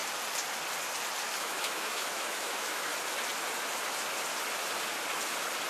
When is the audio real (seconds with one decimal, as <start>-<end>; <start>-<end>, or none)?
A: 0.0-1.4; 2.9-5.7